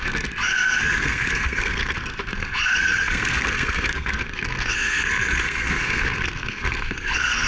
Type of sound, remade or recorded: remade